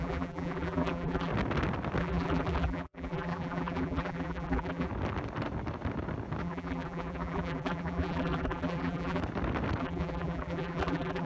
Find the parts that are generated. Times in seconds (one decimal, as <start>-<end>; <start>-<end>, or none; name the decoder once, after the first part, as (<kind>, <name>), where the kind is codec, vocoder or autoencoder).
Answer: 0.0-1.3 (vocoder, BigVGAN v2); 2.0-4.9; 6.4-9.2; 9.8-11.3